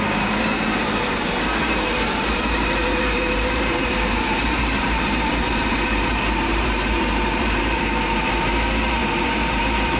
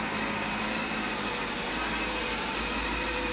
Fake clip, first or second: first